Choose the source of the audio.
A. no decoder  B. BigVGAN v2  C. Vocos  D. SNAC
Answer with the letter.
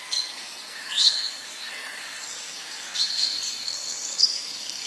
D